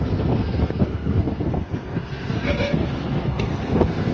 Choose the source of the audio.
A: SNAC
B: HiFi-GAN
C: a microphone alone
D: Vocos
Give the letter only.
A